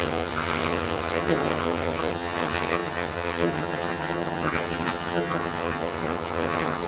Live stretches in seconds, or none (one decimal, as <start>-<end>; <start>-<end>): none